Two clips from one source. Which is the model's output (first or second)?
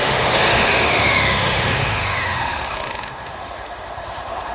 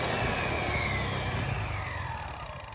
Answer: first